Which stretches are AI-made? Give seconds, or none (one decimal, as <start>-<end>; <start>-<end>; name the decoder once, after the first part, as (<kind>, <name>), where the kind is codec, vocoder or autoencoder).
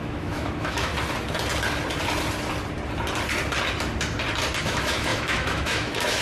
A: 0.0-0.9 (autoencoder, DAC-VAE); 4.6-6.2